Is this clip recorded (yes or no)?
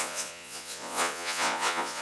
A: no